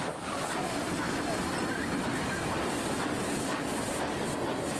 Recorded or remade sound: recorded